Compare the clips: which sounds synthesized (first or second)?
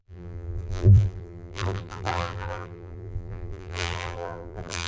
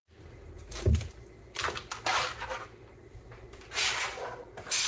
first